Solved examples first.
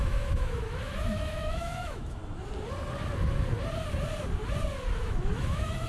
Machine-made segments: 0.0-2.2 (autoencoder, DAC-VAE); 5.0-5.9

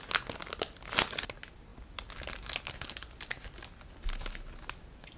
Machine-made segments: none

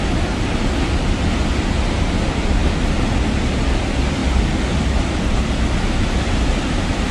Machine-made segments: none

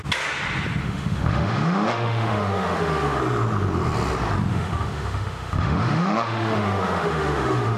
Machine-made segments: 0.8-3.2 (autoencoder, DAC-VAE); 4.5-7.8

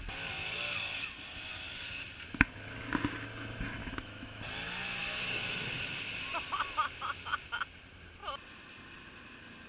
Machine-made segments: 3.8-4.4 (autoencoder, DAC-VAE)

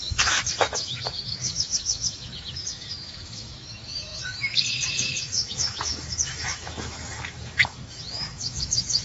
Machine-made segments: 0.0-9.0 (autoencoder, DAC-VAE)

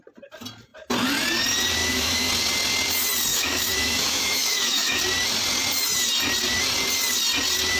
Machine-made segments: 1.8-2.3 (autoencoder, DAC-VAE); 3.3-5.0